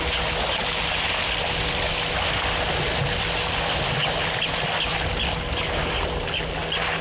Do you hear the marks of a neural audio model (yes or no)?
no